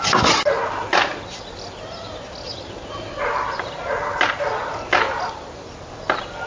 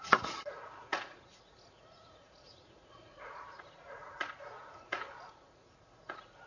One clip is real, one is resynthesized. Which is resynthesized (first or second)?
second